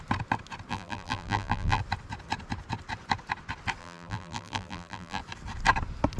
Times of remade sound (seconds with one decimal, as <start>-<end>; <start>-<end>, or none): 0.7-1.8; 3.8-5.2